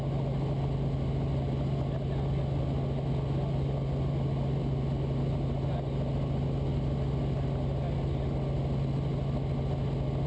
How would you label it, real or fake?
real